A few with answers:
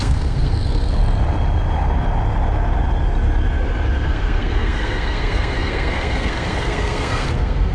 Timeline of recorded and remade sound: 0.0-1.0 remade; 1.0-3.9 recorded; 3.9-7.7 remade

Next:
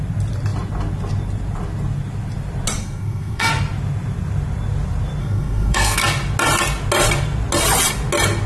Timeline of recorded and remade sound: 0.0-2.8 recorded; 2.8-3.5 remade; 3.5-5.2 recorded; 5.2-6.0 remade; 6.0-8.5 recorded

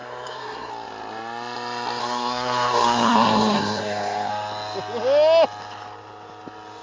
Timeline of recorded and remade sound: 0.0-0.7 remade; 0.7-2.0 recorded; 2.0-4.3 remade; 4.3-6.8 recorded

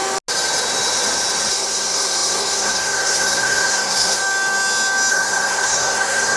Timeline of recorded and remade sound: 0.0-1.5 recorded; 1.5-4.2 remade; 4.2-5.1 recorded; 5.1-6.4 remade